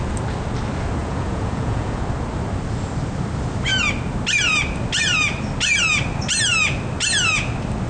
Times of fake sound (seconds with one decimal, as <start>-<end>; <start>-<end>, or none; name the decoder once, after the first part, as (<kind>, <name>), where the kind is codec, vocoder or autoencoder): 1.0-2.0 (vocoder, Vocos)

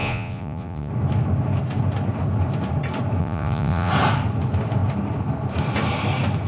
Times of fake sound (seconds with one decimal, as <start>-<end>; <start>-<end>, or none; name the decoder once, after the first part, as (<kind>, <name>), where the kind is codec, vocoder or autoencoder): 0.0-0.9 (vocoder, Vocos); 3.2-3.9

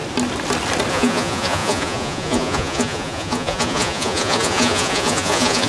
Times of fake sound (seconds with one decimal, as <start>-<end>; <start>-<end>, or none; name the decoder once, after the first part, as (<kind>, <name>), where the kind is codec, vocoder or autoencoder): 0.9-5.7 (vocoder, Vocos)